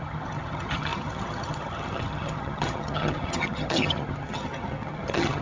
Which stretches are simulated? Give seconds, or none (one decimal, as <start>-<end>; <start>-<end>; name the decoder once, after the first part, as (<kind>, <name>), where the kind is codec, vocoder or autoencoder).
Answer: 0.0-5.4 (vocoder, HiFi-GAN)